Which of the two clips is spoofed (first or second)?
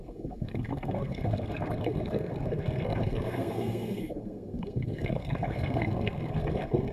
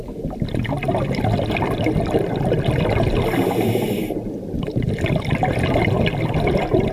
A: first